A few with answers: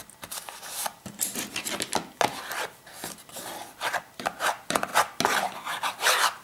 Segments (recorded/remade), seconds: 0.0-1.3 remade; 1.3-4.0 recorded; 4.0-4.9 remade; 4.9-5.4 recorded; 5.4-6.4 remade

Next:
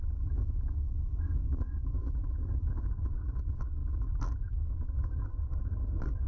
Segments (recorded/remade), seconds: 0.0-6.3 remade